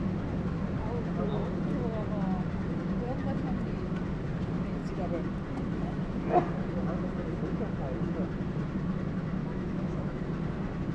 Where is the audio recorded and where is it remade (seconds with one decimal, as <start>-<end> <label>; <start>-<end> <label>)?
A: 0.0-9.4 recorded; 9.4-10.2 remade; 10.2-10.9 recorded